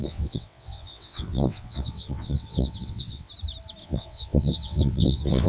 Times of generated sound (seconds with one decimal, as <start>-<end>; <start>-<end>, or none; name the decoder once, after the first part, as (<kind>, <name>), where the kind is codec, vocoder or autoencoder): 0.0-3.3 (vocoder, WaveNeXt); 3.8-5.5